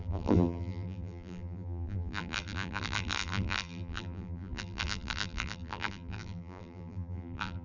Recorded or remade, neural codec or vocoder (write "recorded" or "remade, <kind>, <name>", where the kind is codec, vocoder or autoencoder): remade, vocoder, BigVGAN v2